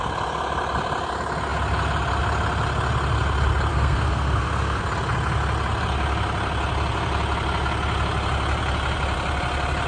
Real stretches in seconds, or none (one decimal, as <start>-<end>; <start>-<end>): 0.0-3.7; 4.8-9.9

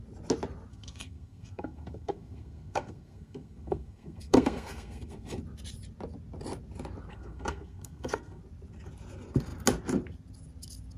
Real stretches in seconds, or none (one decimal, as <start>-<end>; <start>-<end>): 0.0-0.7; 5.4-7.1; 8.4-11.0

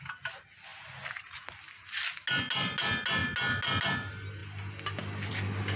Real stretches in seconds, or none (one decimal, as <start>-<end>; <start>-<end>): 0.0-5.8

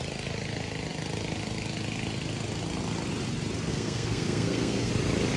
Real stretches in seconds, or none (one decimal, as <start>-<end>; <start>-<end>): 0.0-3.7; 4.9-5.4

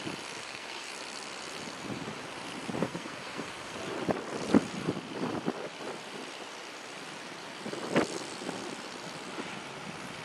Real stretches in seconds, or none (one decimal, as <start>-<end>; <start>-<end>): 0.0-0.4; 0.9-2.8; 3.8-10.2

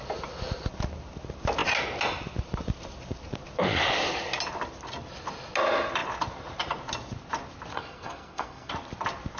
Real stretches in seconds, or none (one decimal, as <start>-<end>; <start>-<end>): 0.0-7.7; 8.7-9.4

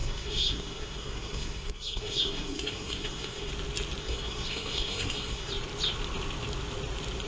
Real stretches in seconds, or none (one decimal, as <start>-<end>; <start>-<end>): 3.5-4.0; 5.5-7.3